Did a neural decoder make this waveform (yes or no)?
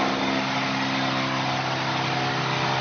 no